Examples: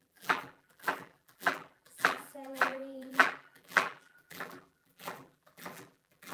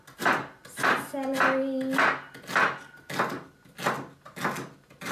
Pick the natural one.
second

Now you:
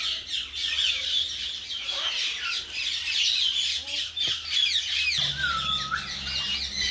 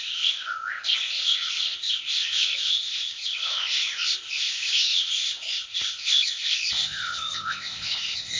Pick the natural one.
first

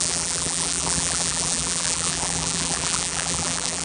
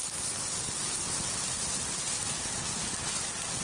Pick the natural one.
second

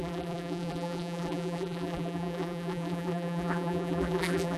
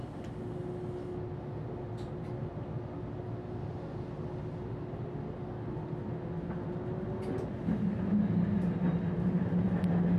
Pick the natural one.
second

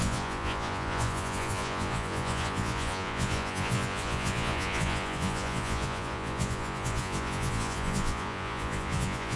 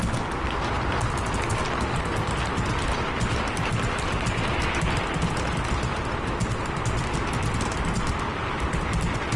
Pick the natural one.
second